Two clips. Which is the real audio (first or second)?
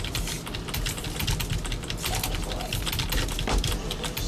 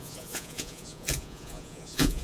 first